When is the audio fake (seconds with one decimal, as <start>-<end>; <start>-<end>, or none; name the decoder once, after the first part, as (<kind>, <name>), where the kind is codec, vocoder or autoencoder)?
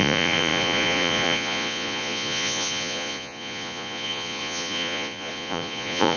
0.0-6.2 (vocoder, Vocos)